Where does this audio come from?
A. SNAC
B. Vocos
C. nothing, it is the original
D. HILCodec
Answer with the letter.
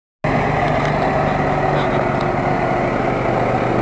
C